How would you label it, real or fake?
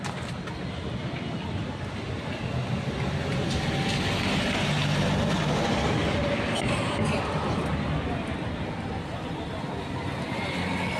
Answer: real